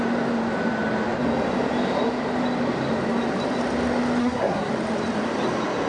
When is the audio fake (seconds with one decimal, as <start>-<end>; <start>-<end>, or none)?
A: 4.2-4.7